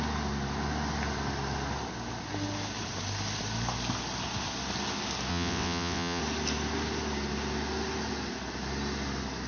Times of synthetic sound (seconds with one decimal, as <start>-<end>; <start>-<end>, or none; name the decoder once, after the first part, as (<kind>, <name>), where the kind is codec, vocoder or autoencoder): 5.3-6.2 (vocoder, WaveNeXt)